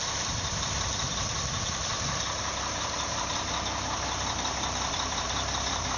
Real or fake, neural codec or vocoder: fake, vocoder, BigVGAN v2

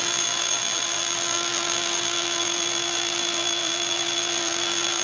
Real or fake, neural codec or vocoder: fake, vocoder, BigVGAN v2